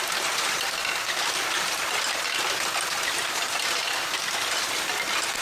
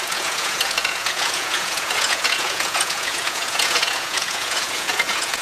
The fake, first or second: second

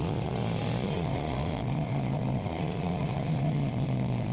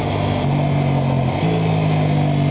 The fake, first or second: first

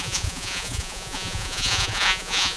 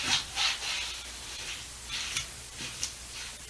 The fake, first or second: first